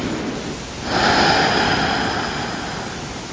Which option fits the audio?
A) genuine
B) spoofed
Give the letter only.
A